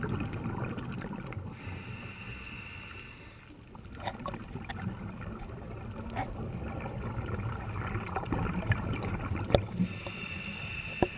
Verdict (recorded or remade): recorded